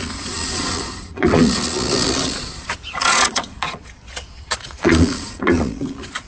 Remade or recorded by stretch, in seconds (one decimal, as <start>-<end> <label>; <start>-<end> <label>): 0.0-6.3 remade